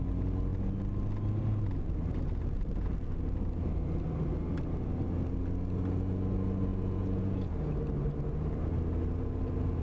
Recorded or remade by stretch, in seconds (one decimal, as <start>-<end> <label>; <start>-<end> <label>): 0.0-6.7 recorded; 6.7-7.5 remade; 7.5-9.8 recorded